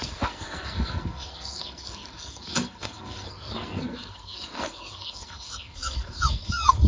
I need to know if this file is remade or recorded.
remade